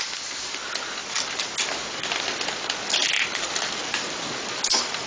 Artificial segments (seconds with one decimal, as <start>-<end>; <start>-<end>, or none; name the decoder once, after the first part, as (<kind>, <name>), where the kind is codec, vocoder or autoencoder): none